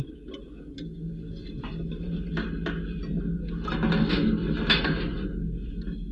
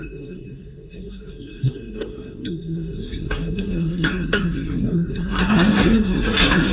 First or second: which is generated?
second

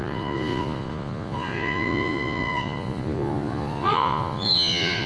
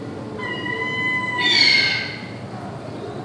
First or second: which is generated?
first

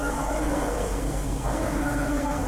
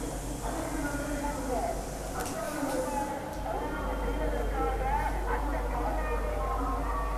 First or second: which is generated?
first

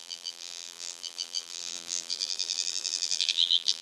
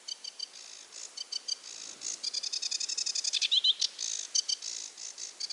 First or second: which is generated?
first